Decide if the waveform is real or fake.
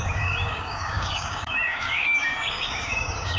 fake